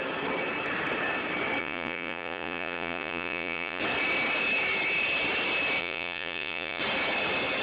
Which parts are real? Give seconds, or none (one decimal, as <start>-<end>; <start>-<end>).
0.0-1.6; 3.8-5.8; 6.8-7.6